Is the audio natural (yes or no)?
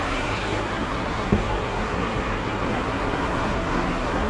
no